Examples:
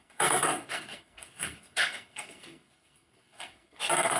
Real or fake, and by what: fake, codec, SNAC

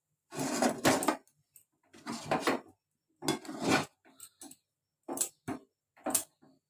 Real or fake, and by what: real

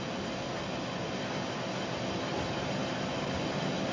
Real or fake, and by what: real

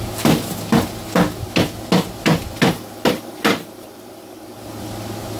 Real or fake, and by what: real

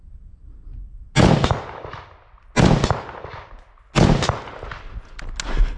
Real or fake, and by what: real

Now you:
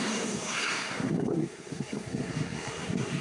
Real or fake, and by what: fake, codec, SNAC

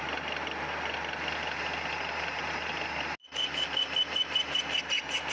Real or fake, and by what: real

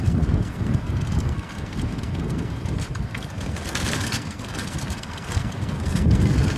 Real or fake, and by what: fake, codec, SNAC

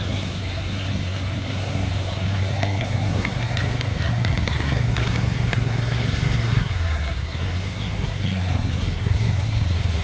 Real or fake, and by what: fake, codec, SNAC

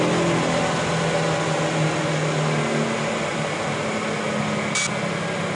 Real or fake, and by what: real